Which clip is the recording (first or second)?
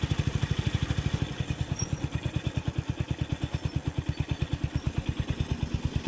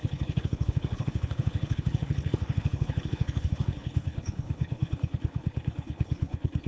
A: first